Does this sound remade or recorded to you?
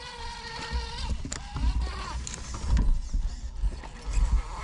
recorded